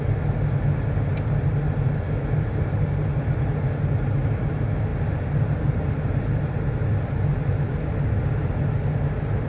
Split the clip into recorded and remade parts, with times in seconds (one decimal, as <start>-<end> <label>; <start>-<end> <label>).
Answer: 0.0-9.5 recorded